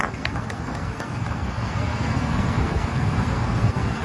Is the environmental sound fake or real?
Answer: fake